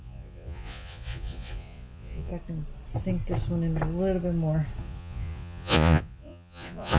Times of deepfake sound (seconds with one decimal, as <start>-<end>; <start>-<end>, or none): 0.0-2.3; 4.8-7.0